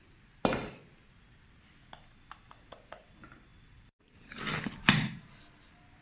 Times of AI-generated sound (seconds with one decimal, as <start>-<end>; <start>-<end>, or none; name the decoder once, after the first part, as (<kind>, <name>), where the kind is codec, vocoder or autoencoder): 3.5-5.0 (vocoder, BigVGAN v2)